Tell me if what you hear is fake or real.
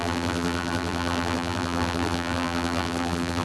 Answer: fake